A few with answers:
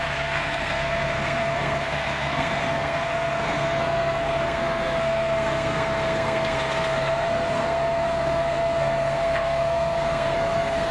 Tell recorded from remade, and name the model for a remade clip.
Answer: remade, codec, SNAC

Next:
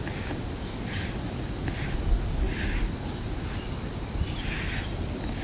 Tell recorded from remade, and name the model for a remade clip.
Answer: recorded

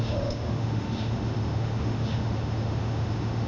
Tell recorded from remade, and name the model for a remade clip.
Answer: remade, autoencoder, DAC-VAE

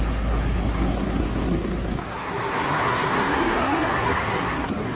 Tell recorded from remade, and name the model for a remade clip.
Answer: remade, codec, SNAC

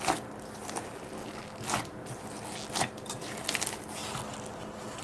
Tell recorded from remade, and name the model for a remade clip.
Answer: recorded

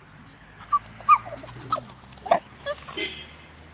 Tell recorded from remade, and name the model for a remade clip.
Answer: recorded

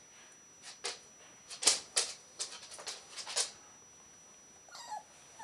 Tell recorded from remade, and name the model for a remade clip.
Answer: recorded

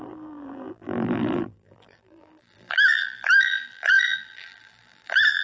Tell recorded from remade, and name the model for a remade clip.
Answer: remade, vocoder, BigVGAN v2